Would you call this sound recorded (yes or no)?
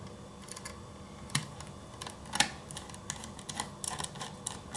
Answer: yes